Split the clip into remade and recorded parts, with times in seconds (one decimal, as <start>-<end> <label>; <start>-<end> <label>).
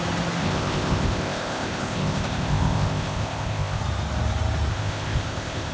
0.0-0.4 recorded; 0.4-3.8 remade; 3.8-4.7 recorded; 4.7-5.7 remade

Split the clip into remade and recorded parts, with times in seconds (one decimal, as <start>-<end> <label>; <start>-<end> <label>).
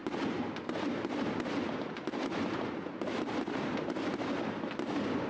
0.0-5.3 recorded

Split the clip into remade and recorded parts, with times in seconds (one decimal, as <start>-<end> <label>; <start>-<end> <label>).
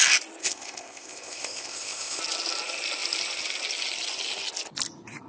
0.0-0.4 recorded; 0.4-2.2 remade; 2.2-5.3 recorded